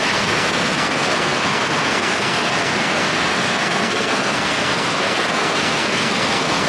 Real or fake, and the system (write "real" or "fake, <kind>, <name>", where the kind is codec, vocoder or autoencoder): fake, codec, SNAC